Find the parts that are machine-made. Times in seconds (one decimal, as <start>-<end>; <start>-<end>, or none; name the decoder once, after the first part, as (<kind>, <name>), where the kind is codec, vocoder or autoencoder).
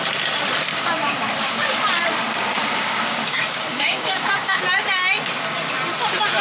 0.7-1.8 (codec, DAC); 2.6-4.6